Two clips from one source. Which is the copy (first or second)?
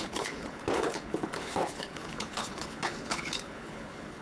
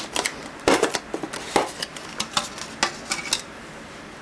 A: first